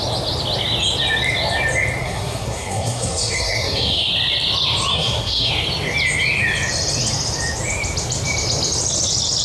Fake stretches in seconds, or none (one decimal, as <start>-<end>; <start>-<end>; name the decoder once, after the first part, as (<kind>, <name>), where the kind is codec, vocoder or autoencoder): 2.0-4.1 (codec, SNAC); 4.9-5.5